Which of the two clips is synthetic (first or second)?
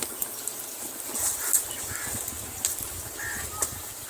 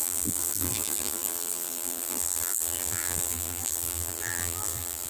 second